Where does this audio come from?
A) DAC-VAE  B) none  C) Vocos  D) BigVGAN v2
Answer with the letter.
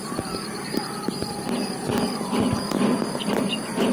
D